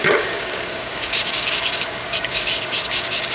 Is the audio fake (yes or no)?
yes